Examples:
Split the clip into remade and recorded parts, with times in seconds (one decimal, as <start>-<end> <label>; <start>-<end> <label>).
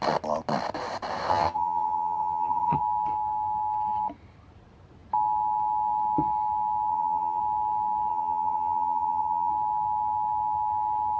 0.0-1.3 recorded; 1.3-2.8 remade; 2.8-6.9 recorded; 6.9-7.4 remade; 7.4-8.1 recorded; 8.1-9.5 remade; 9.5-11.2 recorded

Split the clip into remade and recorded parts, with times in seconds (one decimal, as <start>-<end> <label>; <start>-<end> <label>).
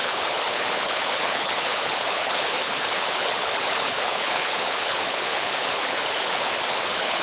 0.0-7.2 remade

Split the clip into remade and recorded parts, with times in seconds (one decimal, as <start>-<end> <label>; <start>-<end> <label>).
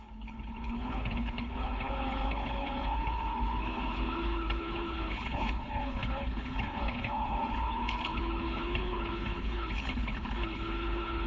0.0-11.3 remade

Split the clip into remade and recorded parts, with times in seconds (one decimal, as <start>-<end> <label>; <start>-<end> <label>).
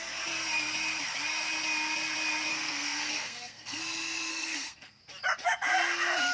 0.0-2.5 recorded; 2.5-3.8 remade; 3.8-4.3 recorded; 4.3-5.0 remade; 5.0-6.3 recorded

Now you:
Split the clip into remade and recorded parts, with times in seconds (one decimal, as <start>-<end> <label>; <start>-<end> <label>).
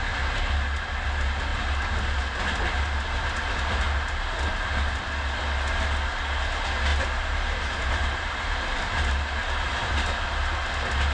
0.0-6.9 recorded; 6.9-9.2 remade; 9.2-11.1 recorded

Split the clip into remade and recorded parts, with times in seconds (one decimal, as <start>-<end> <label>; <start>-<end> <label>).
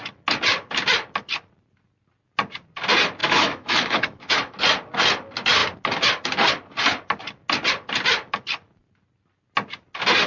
0.0-3.2 recorded; 3.2-4.6 remade; 4.6-10.3 recorded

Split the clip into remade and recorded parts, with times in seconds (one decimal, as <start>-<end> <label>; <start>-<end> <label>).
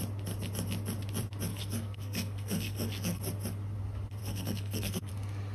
0.0-1.5 recorded; 1.5-3.2 remade; 3.2-4.2 recorded; 4.2-5.1 remade; 5.1-5.5 recorded